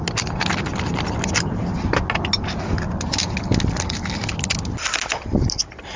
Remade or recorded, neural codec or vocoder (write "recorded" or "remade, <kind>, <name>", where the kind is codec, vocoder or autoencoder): recorded